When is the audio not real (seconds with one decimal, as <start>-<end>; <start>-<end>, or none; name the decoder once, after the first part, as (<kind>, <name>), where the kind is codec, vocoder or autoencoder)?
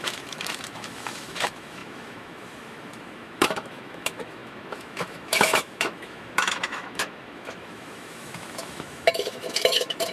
0.0-10.1 (autoencoder, DAC-VAE)